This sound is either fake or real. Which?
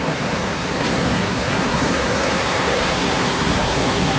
fake